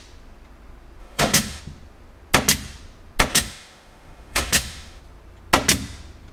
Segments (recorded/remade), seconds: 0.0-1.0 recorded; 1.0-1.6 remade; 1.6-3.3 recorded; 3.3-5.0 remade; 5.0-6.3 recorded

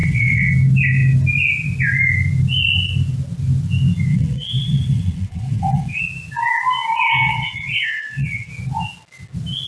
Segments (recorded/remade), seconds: 0.0-0.5 remade; 0.5-4.1 recorded; 4.1-6.0 remade; 6.0-7.3 recorded; 7.3-8.5 remade; 8.5-9.7 recorded

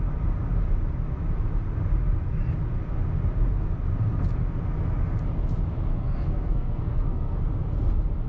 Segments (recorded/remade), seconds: 0.0-5.9 recorded; 5.9-7.4 remade; 7.4-8.3 recorded